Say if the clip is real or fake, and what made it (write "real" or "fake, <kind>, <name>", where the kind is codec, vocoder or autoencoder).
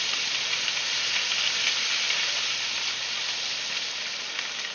real